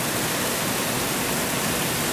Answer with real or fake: real